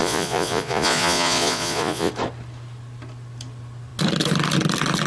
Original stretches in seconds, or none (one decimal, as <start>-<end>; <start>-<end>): 2.1-5.1